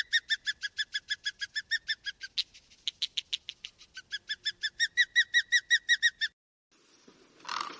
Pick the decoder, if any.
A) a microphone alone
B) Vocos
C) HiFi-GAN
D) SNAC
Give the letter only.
A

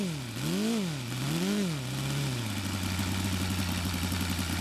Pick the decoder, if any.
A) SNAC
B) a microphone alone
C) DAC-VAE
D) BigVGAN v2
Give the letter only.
B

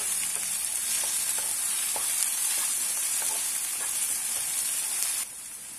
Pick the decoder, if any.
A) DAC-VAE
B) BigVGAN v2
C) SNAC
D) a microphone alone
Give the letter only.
B